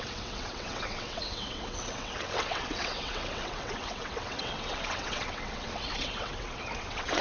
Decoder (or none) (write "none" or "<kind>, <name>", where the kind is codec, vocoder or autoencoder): vocoder, WaveNeXt